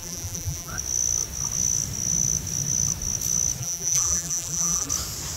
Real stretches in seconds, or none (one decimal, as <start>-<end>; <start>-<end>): 0.7-3.6; 4.9-5.4